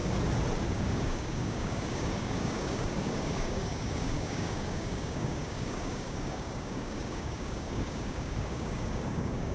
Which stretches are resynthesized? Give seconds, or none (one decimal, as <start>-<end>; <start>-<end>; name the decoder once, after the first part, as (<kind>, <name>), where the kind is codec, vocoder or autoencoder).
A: 0.6-9.5 (codec, DAC)